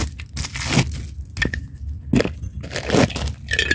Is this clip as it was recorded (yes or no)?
yes